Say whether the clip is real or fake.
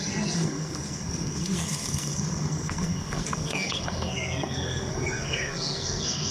fake